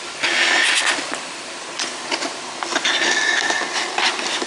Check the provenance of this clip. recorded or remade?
recorded